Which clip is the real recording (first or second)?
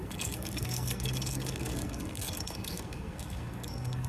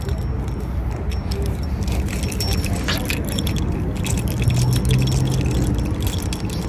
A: second